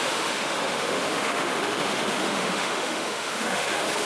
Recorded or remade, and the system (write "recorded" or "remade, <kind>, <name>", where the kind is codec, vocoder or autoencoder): remade, autoencoder, DAC-VAE